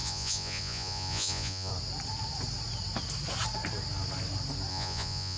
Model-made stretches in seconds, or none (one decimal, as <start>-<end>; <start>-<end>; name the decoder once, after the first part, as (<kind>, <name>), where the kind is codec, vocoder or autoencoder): 0.0-1.7 (vocoder, Vocos); 4.7-5.4